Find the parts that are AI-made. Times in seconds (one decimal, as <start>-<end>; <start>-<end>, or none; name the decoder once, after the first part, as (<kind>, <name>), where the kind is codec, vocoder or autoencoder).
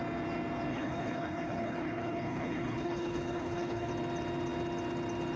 0.7-3.9 (codec, HILCodec)